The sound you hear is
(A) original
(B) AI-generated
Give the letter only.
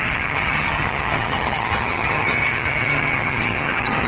B